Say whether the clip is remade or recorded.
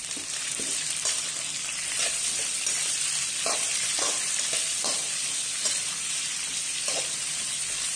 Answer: remade